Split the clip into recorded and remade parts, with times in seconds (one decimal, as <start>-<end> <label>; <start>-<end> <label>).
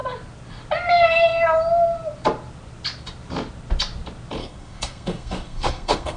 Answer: 0.0-4.4 recorded; 4.4-6.2 remade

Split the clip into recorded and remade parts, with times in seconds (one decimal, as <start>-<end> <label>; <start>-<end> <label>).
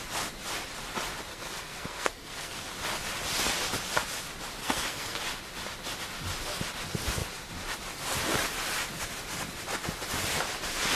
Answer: 0.0-1.3 recorded; 1.3-2.7 remade; 2.7-4.6 recorded; 4.6-5.2 remade; 5.2-11.0 recorded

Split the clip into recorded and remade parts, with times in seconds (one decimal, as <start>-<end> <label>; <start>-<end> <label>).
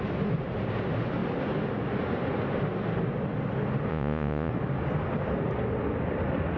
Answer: 0.0-3.9 recorded; 3.9-4.5 remade; 4.5-6.6 recorded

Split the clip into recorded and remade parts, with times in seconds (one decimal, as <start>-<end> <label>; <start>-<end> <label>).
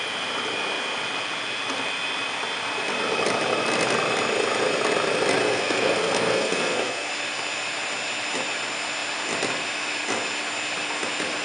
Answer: 0.0-5.4 recorded; 5.4-7.1 remade; 7.1-11.4 recorded